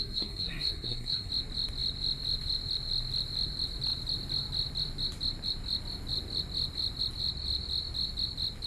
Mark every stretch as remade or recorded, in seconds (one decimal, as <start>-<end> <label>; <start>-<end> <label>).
0.0-1.3 remade; 1.3-8.7 recorded

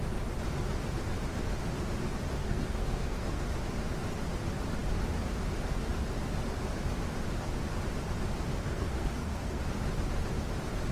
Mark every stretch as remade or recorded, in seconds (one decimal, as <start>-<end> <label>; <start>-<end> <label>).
0.0-2.4 recorded; 2.4-3.4 remade; 3.4-8.6 recorded; 8.6-9.6 remade; 9.6-10.9 recorded

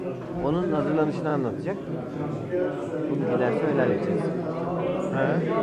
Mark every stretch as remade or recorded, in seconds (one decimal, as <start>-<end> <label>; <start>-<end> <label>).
0.0-5.6 recorded

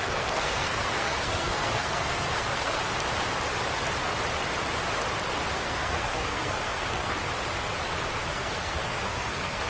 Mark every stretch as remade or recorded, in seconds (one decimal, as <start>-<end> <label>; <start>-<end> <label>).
0.0-2.8 remade; 2.8-5.5 recorded; 5.5-7.2 remade; 7.2-8.3 recorded; 8.3-9.7 remade

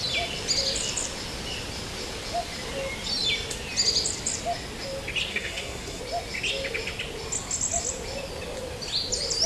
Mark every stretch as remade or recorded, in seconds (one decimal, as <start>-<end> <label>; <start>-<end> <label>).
0.0-5.3 recorded; 5.3-6.0 remade; 6.0-9.5 recorded

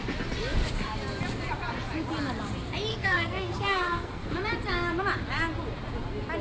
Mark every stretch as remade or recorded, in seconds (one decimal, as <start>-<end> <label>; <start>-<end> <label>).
0.0-2.9 recorded; 2.9-4.3 remade; 4.3-6.4 recorded